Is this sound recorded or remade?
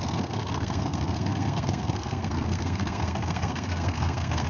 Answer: remade